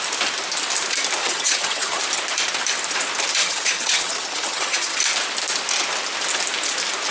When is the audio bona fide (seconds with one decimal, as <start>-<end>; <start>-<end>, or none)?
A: 0.0-1.2; 2.0-3.4; 5.0-7.1